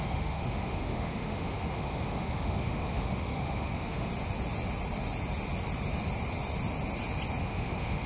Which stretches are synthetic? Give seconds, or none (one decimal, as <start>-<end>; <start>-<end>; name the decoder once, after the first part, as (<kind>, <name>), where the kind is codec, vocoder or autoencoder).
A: 0.0-4.1 (autoencoder, DAC-VAE); 7.4-8.1